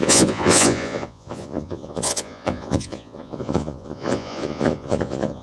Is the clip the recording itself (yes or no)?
no